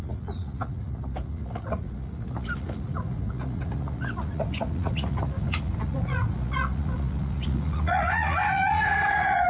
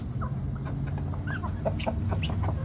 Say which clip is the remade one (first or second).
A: first